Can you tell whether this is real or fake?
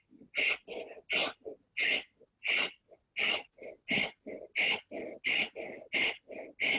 real